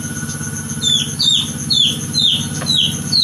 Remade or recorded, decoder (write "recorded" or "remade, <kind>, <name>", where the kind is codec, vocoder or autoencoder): recorded